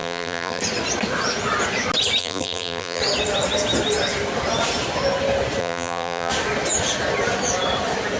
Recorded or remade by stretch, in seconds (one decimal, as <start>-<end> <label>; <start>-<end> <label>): 0.0-0.6 remade; 0.6-2.2 recorded; 2.2-3.0 remade; 3.0-5.6 recorded; 5.6-6.3 remade; 6.3-8.2 recorded